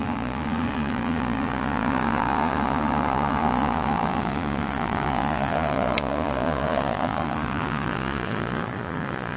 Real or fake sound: fake